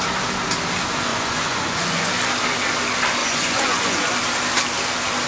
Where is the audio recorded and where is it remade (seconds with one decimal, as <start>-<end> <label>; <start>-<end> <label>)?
0.0-1.1 recorded; 1.1-2.1 remade; 2.1-3.2 recorded; 3.2-4.1 remade; 4.1-5.3 recorded